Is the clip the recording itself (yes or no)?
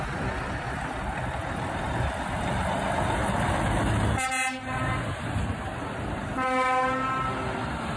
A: yes